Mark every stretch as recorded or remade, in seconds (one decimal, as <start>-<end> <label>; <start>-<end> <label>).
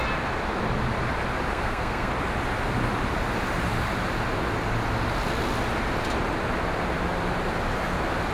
0.0-1.5 recorded; 1.5-2.1 remade; 2.1-8.3 recorded